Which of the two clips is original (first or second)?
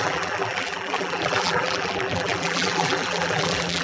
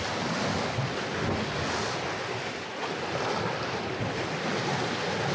second